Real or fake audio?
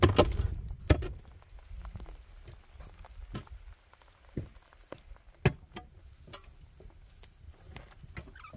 real